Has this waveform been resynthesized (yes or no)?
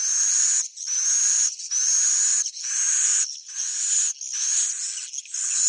no